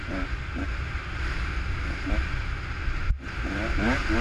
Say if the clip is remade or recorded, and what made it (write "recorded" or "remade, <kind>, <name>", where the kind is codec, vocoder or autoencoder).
recorded